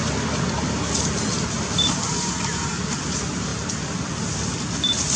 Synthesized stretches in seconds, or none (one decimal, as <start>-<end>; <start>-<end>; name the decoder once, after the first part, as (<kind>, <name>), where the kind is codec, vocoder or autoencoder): none